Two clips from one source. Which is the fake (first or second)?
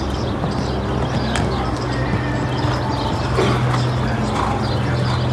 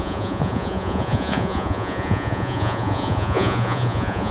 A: second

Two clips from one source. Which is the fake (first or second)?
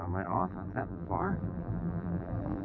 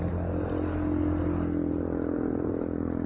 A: first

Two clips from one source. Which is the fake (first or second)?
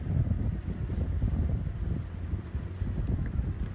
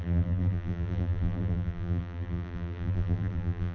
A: second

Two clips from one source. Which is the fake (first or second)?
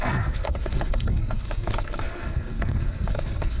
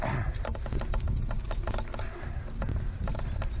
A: first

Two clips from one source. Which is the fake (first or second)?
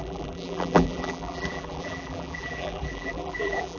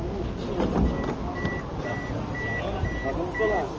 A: first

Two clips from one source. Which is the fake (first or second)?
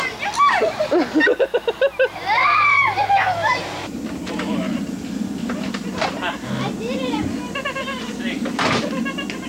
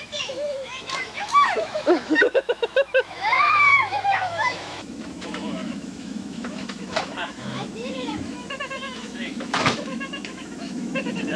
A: second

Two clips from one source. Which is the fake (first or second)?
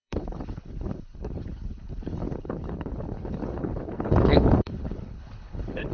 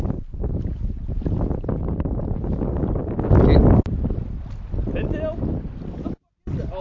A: first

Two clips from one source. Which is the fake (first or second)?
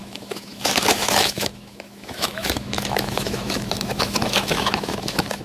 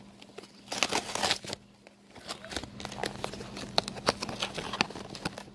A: first